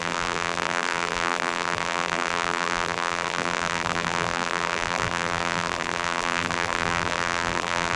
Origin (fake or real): fake